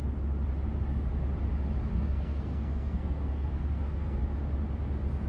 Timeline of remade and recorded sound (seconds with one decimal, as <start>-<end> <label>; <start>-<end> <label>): 0.0-1.9 recorded; 1.9-4.2 remade; 4.2-5.3 recorded